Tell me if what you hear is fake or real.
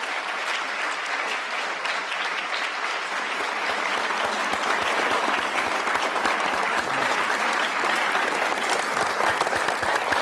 fake